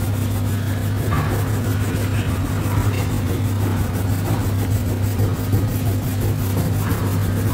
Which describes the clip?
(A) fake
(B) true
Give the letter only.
B